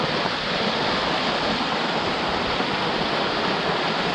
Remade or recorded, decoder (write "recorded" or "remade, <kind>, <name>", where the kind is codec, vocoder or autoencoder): recorded